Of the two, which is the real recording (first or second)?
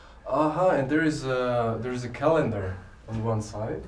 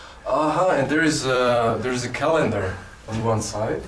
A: first